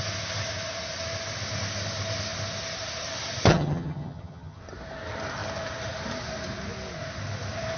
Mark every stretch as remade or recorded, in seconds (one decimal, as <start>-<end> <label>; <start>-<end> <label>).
0.0-3.5 recorded; 3.5-4.6 remade; 4.6-7.8 recorded